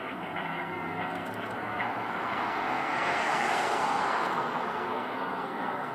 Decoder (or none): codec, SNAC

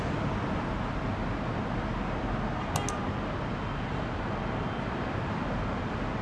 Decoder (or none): none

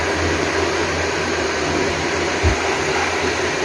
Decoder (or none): none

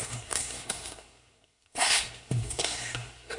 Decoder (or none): codec, SNAC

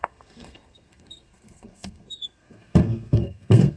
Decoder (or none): codec, SNAC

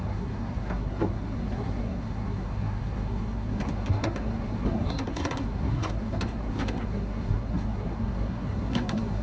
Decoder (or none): codec, SNAC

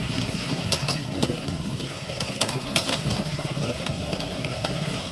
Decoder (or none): codec, SNAC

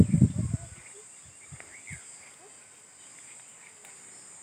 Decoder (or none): none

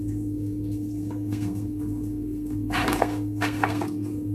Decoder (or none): codec, SNAC